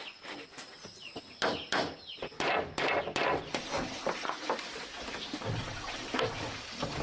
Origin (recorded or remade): recorded